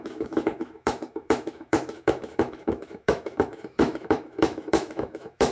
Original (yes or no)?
no